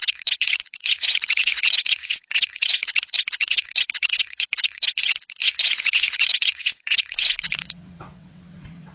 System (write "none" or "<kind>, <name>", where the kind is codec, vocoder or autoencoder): vocoder, WaveNeXt